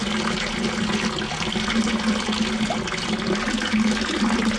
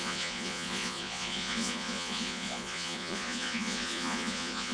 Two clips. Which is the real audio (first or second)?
first